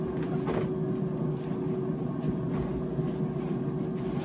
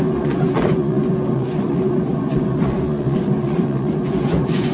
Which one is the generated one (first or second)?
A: second